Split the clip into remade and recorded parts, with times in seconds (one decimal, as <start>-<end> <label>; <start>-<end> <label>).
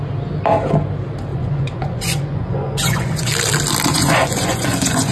0.0-1.3 recorded; 1.3-3.3 remade; 3.3-3.9 recorded; 3.9-5.1 remade